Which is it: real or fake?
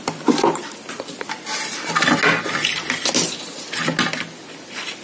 real